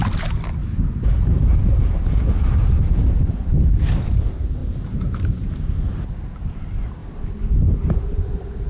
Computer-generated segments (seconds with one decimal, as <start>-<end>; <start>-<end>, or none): 0.6-3.8; 4.6-5.4